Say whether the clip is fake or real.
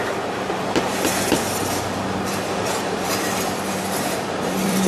fake